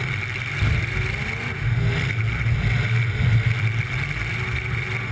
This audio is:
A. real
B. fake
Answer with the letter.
A